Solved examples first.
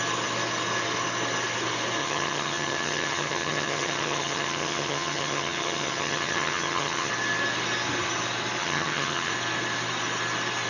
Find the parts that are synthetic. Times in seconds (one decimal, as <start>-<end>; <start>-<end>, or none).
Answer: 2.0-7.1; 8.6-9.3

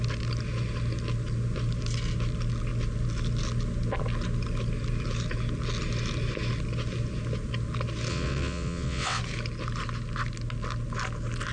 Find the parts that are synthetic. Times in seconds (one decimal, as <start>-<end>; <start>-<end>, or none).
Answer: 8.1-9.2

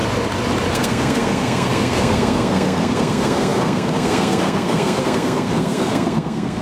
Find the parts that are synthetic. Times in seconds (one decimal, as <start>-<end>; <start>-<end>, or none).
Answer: 0.7-6.6

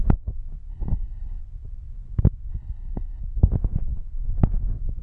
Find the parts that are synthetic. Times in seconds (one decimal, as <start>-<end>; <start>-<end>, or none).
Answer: 0.7-1.4; 2.5-3.2